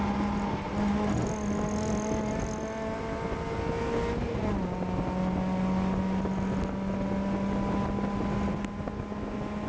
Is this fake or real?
real